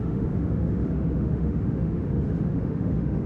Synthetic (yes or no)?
yes